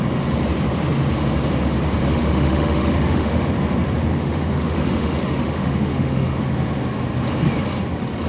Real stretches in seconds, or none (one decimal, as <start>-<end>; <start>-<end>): 0.0-2.0; 3.5-4.1; 6.4-8.3